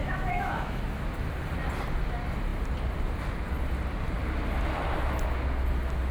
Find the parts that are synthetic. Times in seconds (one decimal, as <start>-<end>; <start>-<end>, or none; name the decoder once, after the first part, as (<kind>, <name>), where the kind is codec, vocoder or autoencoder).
0.0-0.8 (autoencoder, DAC-VAE)